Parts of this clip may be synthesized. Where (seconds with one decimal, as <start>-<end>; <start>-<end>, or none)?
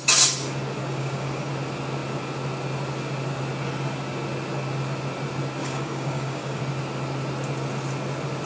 0.8-1.5; 5.6-6.6